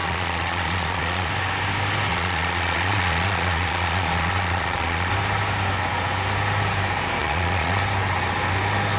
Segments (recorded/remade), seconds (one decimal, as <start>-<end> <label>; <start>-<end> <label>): 0.0-1.3 remade; 1.3-2.1 recorded; 2.1-5.1 remade; 5.1-7.2 recorded; 7.2-7.8 remade; 7.8-9.0 recorded